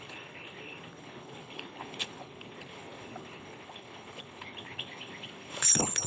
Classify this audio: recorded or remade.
remade